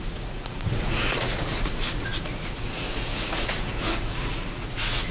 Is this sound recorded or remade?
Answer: remade